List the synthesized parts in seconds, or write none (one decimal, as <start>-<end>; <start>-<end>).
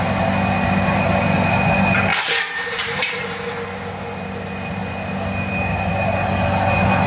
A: 2.1-3.2